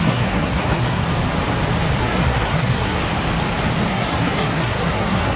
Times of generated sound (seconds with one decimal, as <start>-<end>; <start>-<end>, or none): 0.0-1.0; 2.0-3.0; 3.9-5.4